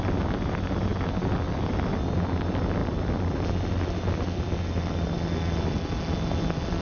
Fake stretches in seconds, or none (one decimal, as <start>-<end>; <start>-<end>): none